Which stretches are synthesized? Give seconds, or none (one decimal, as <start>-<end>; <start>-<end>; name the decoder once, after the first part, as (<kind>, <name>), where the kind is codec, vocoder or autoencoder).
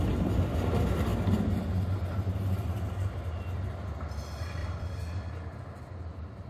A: 4.6-5.3 (vocoder, BigVGAN v2)